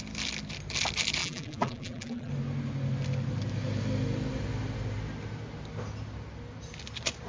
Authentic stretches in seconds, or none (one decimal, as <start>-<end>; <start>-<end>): 0.0-1.2; 2.3-7.3